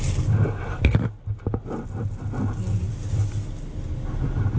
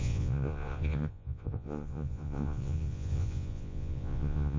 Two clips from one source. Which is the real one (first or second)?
first